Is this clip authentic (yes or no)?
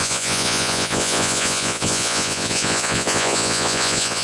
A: no